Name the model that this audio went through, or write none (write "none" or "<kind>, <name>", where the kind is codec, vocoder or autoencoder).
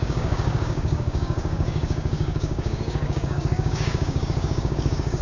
codec, DAC